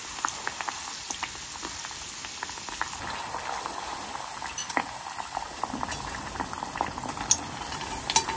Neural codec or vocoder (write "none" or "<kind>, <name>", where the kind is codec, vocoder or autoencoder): none